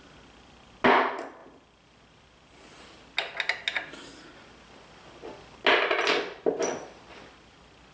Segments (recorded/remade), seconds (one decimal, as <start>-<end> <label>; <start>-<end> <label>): 0.0-7.9 recorded